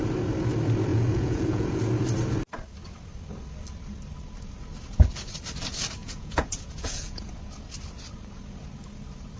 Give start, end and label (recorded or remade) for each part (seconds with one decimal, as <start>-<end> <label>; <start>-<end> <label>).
0.0-0.9 recorded; 0.9-1.8 remade; 1.8-6.0 recorded; 6.0-7.3 remade; 7.3-9.4 recorded